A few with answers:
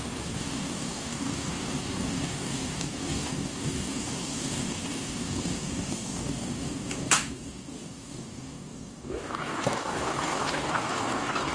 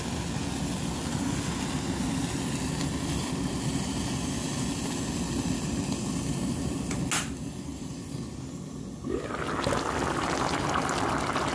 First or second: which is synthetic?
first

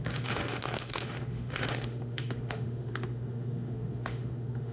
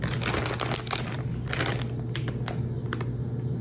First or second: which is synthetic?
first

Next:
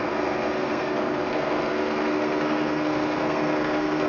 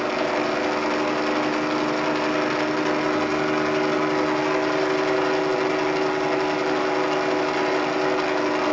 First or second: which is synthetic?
first